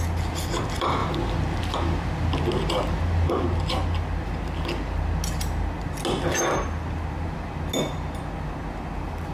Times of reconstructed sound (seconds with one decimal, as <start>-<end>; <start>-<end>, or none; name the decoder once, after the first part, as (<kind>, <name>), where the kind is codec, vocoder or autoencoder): none

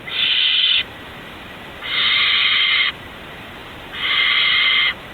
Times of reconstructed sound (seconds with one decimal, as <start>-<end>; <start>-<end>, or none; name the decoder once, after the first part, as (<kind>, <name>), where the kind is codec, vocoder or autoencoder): 2.4-2.9 (vocoder, BigVGAN v2)

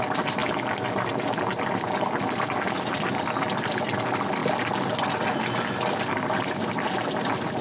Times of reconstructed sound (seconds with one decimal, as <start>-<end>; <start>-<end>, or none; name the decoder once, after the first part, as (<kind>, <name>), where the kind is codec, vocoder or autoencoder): none

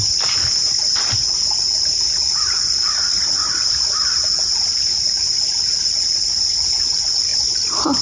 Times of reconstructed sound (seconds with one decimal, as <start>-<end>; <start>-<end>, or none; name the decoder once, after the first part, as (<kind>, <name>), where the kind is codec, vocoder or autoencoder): 3.4-4.2 (vocoder, BigVGAN v2); 7.3-8.0

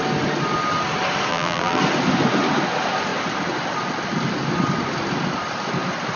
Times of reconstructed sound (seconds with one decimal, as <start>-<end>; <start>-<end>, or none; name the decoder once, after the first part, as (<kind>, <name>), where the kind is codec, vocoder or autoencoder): 1.3-1.8 (vocoder, BigVGAN v2)

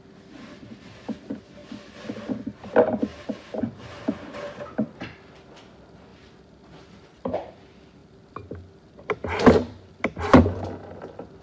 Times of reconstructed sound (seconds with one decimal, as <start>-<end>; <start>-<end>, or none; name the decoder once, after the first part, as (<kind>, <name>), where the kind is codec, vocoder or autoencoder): 1.6-2.7 (vocoder, BigVGAN v2); 3.1-5.0; 6.1-7.5; 8.0-9.9

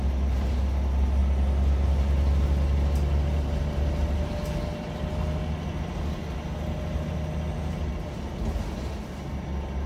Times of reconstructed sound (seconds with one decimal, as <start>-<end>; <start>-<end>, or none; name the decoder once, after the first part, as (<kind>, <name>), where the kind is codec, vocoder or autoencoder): none

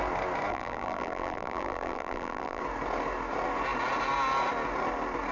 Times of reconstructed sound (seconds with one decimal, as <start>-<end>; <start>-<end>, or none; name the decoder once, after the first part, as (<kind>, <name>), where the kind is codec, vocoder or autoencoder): 0.5-2.6 (vocoder, BigVGAN v2)